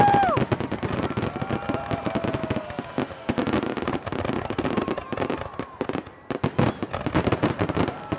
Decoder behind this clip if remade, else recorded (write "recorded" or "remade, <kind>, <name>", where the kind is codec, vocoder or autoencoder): recorded